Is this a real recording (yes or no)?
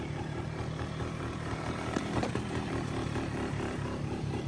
no